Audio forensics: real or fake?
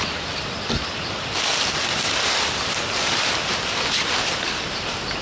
fake